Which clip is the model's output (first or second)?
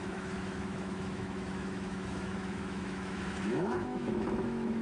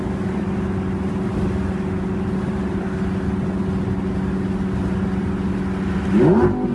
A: first